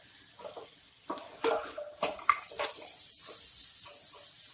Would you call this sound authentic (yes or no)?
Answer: yes